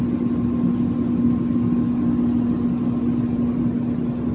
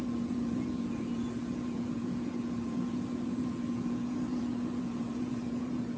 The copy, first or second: second